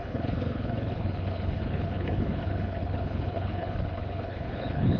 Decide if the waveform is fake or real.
fake